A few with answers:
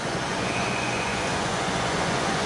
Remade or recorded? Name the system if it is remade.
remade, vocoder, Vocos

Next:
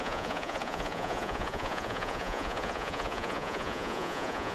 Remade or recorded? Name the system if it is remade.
remade, vocoder, Vocos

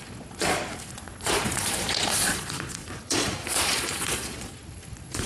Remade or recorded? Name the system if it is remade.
remade, vocoder, Vocos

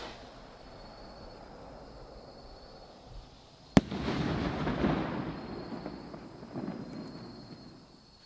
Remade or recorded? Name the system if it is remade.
recorded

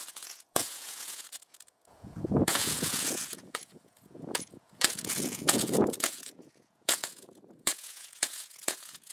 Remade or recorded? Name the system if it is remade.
remade, vocoder, Vocos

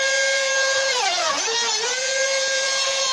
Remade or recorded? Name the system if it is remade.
remade, vocoder, Vocos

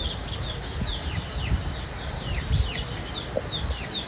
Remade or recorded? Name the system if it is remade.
recorded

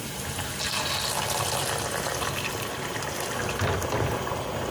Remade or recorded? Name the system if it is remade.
recorded